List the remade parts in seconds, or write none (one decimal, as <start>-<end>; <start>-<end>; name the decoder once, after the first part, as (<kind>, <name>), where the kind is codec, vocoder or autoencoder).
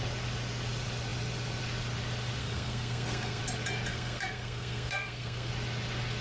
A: 2.4-3.4 (codec, SNAC); 3.9-5.5